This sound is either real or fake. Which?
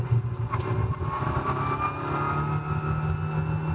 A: real